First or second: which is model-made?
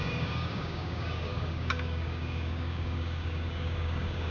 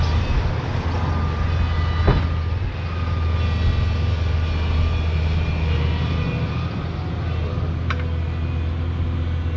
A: first